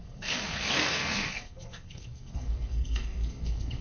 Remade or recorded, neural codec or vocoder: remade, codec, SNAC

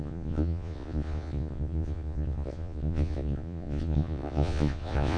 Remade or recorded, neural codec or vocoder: remade, vocoder, Vocos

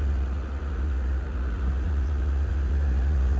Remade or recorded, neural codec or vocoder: remade, vocoder, Vocos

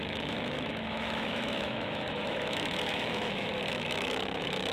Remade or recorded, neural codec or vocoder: remade, autoencoder, DAC-VAE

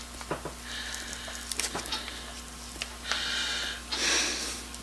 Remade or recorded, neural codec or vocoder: recorded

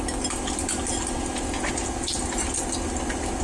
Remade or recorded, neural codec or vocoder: recorded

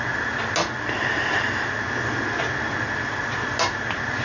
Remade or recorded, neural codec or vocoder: recorded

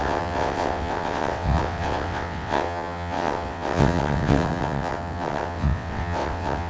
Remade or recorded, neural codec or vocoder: remade, vocoder, WaveNeXt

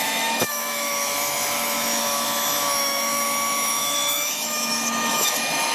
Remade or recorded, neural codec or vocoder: remade, autoencoder, DAC-VAE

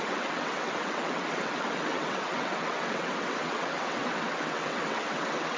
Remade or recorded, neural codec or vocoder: remade, vocoder, WaveNeXt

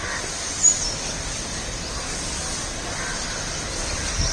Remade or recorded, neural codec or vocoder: recorded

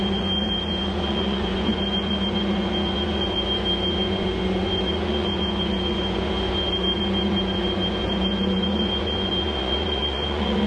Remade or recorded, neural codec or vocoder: remade, vocoder, Vocos